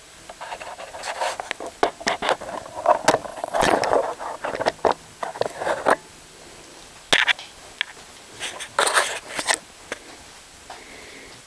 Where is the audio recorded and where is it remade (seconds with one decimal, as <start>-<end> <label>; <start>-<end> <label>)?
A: 0.0-3.3 recorded; 3.3-3.8 remade; 3.8-11.5 recorded